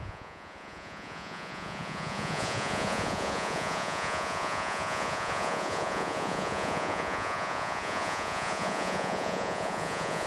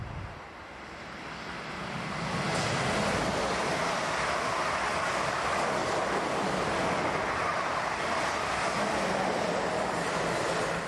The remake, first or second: first